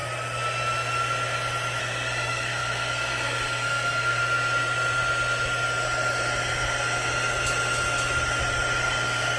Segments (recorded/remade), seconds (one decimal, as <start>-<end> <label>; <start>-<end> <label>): 0.0-1.8 recorded; 1.8-4.2 remade; 4.2-8.8 recorded; 8.8-9.4 remade